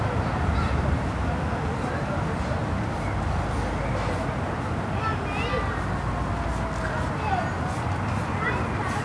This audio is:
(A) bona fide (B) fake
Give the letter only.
A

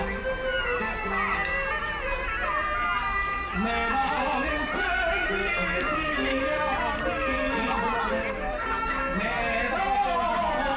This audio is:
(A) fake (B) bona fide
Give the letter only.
B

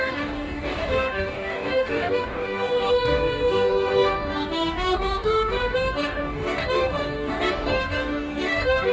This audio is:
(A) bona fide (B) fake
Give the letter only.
B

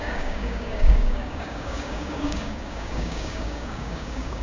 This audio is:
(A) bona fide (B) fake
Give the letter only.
B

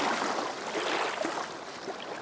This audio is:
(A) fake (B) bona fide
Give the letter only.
B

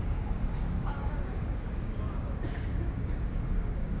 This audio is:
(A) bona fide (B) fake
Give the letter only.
B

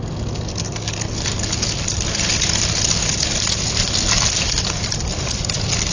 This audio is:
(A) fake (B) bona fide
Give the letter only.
B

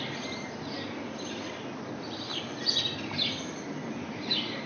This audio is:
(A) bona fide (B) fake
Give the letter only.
A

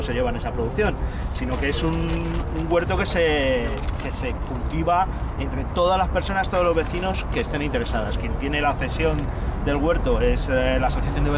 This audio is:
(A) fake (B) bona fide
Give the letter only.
B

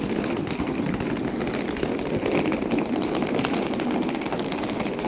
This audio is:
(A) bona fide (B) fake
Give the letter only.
A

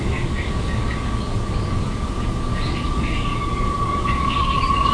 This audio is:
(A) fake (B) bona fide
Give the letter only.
A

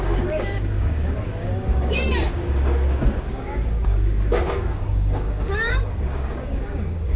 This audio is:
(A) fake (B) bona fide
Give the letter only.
A